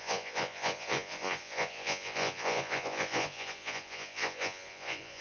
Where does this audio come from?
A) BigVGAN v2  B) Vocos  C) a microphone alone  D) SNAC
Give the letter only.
B